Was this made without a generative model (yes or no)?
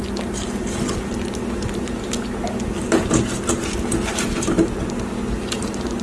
yes